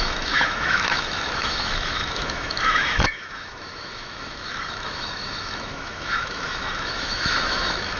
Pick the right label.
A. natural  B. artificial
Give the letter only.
B